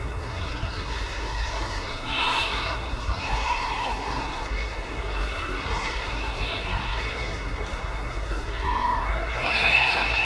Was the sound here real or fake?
fake